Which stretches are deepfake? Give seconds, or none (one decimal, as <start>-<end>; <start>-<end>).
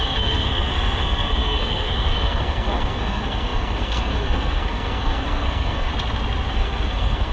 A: 0.0-5.9; 6.5-7.3